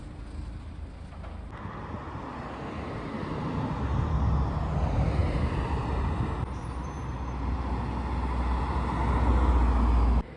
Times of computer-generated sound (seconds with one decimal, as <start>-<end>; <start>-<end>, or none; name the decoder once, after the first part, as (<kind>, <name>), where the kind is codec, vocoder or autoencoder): none